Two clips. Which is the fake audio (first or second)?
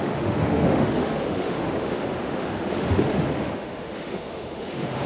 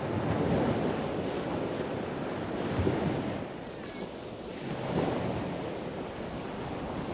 first